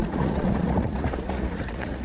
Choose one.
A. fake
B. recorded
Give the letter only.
A